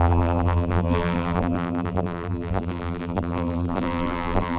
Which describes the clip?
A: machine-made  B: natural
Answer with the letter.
A